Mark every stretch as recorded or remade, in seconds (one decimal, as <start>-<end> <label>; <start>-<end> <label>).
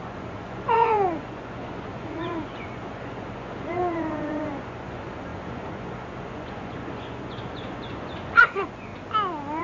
0.0-8.9 remade; 8.9-9.6 recorded